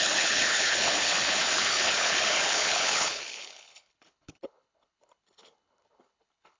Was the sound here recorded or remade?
remade